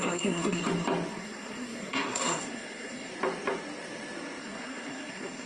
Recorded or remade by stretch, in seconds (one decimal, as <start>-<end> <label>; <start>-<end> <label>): 0.0-0.6 remade; 0.6-1.1 recorded; 1.1-3.1 remade; 3.1-4.4 recorded; 4.4-5.5 remade